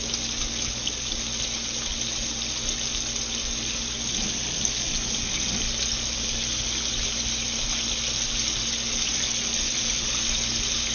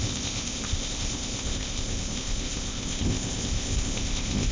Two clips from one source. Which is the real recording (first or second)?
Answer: first